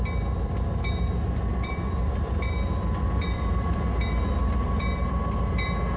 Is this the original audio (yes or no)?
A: no